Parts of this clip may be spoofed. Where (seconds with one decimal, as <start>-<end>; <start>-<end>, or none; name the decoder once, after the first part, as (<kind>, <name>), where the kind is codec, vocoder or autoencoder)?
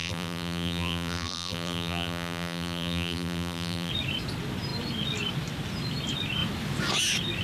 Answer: 0.0-3.9 (vocoder, BigVGAN v2)